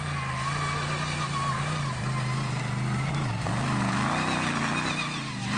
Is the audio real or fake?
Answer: real